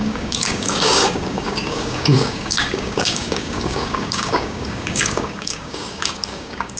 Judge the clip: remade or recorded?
remade